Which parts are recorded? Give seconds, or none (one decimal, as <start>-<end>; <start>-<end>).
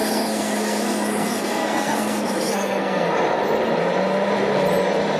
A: 3.1-5.2